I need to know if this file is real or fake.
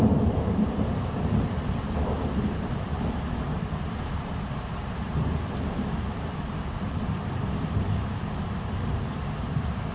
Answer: fake